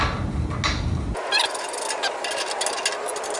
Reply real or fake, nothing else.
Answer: real